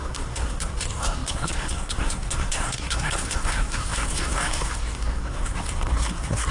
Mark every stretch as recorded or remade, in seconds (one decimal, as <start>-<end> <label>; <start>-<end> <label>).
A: 0.0-6.5 remade